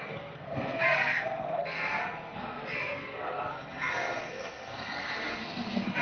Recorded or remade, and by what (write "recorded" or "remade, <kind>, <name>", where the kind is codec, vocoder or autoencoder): remade, codec, SNAC